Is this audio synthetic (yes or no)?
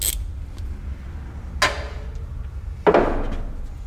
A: no